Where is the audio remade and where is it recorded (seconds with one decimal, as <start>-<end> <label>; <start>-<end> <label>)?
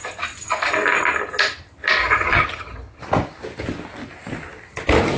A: 0.0-2.0 recorded; 2.0-3.0 remade; 3.0-5.2 recorded